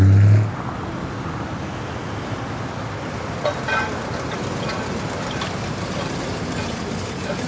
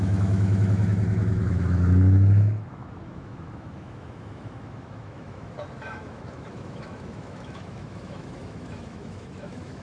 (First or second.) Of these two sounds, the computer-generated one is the second